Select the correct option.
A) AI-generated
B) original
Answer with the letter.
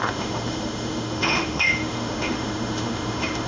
A